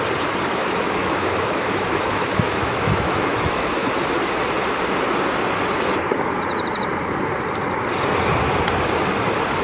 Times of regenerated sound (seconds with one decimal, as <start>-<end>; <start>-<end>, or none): 0.6-3.9